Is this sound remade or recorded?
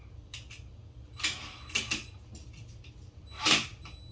recorded